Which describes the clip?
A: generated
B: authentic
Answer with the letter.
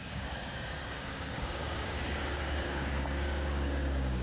A